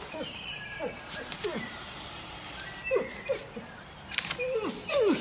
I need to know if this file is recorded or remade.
remade